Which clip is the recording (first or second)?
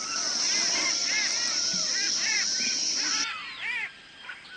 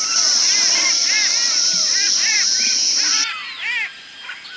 second